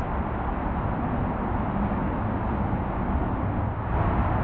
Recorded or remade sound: recorded